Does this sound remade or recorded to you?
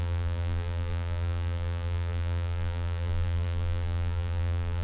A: remade